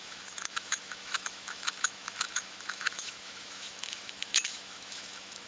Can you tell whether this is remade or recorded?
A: remade